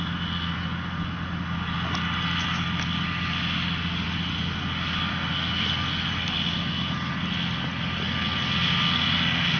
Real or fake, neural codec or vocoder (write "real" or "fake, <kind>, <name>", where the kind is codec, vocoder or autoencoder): real